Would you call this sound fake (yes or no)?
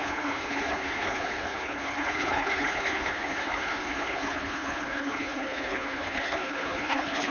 yes